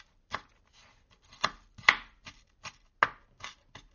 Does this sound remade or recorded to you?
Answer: recorded